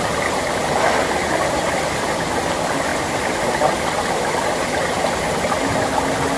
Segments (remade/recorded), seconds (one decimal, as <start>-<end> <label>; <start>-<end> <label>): 0.0-6.4 recorded